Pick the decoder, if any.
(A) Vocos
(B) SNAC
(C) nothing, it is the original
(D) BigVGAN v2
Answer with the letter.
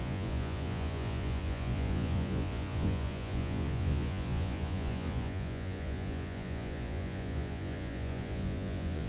A